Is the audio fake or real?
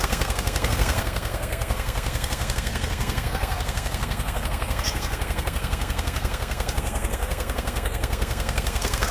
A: fake